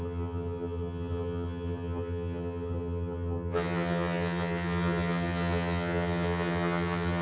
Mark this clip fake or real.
fake